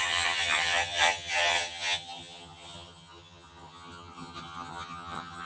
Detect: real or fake fake